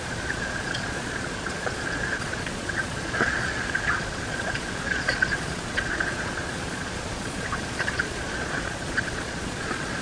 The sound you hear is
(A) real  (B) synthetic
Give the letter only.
B